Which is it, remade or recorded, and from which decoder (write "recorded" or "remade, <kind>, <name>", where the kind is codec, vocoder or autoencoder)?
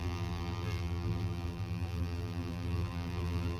remade, vocoder, BigVGAN v2